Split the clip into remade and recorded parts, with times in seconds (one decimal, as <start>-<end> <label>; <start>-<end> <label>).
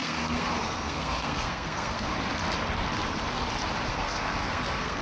0.0-2.1 remade; 2.1-3.9 recorded; 3.9-5.0 remade